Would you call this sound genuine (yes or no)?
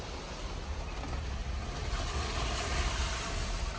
yes